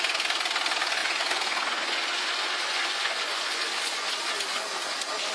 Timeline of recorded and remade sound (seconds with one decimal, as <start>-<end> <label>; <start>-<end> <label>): 0.0-1.0 recorded; 1.0-4.2 remade; 4.2-5.3 recorded